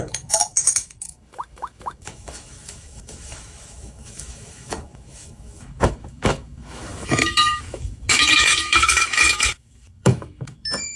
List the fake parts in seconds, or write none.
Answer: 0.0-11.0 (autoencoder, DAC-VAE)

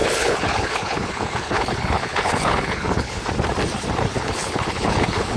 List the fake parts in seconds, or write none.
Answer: 0.0-3.2 (codec, HILCodec); 4.1-5.4